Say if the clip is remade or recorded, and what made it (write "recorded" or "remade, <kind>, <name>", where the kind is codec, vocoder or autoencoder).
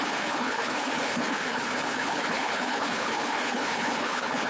remade, codec, HILCodec